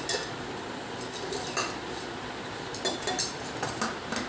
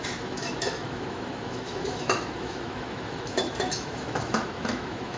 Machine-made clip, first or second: second